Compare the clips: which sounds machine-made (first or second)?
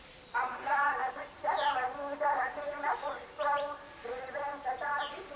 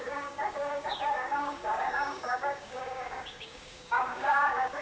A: second